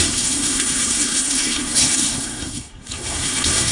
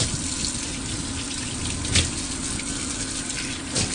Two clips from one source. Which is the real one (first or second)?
second